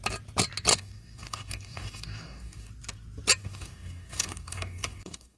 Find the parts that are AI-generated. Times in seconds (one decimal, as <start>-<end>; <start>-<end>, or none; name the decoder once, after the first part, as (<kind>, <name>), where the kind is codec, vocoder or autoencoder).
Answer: 0.7-2.7 (codec, DAC); 3.4-5.4